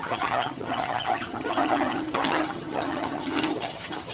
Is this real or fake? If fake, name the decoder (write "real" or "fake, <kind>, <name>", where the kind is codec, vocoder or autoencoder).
fake, vocoder, HiFi-GAN